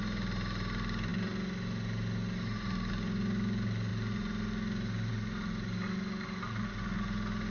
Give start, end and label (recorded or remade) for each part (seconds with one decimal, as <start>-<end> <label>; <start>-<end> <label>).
0.0-7.5 recorded